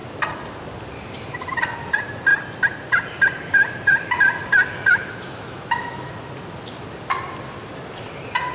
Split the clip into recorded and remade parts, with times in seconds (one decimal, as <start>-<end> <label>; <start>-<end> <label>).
0.0-4.9 recorded; 4.9-6.1 remade; 6.1-8.5 recorded